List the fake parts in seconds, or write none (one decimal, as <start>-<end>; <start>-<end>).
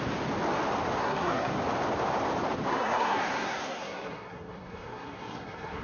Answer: 1.0-1.5; 2.7-5.8